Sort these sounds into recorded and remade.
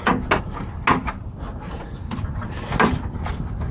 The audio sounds recorded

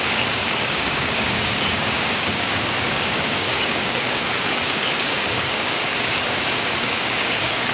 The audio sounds remade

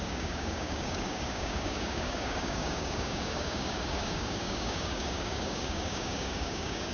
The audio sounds remade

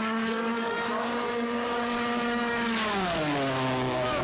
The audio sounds remade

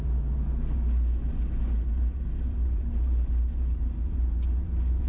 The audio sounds recorded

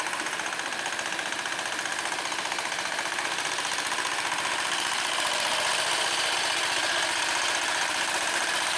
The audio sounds recorded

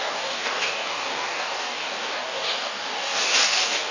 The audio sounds remade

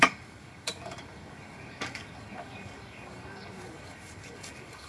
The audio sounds remade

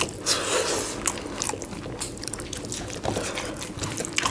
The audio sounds recorded